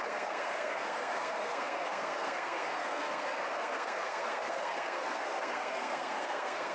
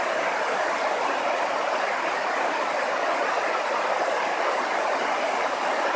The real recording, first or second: second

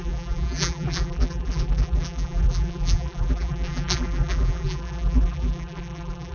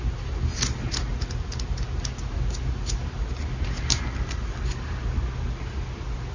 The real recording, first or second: second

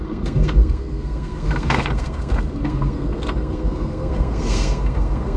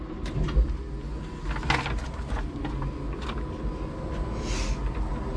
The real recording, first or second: second